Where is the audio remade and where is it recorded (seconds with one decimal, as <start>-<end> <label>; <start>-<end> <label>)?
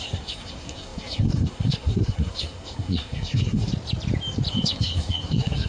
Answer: 0.0-3.7 remade; 3.7-4.5 recorded; 4.5-5.7 remade